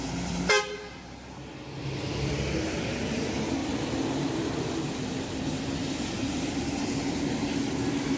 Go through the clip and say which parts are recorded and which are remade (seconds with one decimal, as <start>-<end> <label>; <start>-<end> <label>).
0.0-1.8 recorded; 1.8-2.3 remade; 2.3-3.6 recorded; 3.6-5.0 remade; 5.0-5.8 recorded; 5.8-7.2 remade; 7.2-8.2 recorded